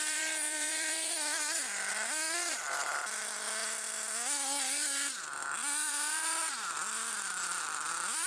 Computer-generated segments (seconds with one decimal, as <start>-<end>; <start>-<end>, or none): 0.0-3.6; 5.9-8.3